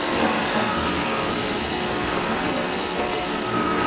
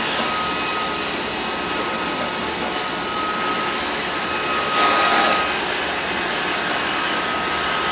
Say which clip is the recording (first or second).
second